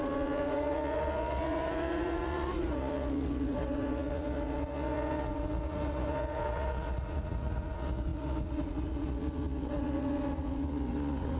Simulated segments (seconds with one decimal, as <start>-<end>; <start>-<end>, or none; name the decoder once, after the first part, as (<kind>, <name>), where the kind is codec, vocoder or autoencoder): 0.0-11.4 (vocoder, Vocos)